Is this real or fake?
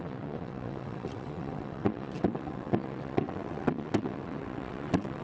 fake